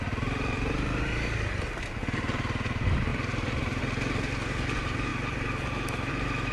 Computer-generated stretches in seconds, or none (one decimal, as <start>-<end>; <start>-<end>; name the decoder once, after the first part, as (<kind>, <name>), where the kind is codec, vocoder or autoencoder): none